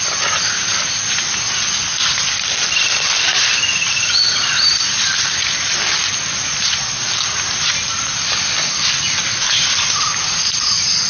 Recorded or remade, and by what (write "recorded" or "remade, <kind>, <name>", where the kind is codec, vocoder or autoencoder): recorded